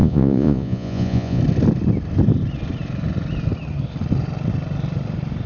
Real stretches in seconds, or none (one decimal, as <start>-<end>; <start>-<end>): 1.4-5.5

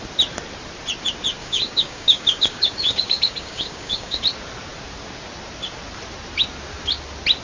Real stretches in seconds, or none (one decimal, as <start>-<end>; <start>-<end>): 0.0-1.4; 4.2-7.4

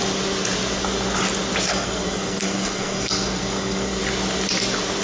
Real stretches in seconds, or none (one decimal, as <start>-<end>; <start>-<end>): 0.0-1.7; 4.0-5.0